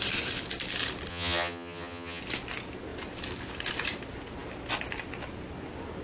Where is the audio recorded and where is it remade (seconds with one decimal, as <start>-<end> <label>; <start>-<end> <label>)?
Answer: 0.0-1.1 recorded; 1.1-2.2 remade; 2.2-6.0 recorded

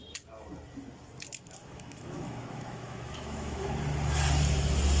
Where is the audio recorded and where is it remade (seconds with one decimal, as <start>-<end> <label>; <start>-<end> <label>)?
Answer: 0.0-1.6 recorded; 1.6-3.7 remade; 3.7-5.0 recorded

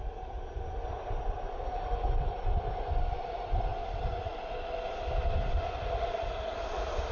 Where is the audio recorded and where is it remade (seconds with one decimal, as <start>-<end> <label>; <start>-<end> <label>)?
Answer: 0.0-7.1 recorded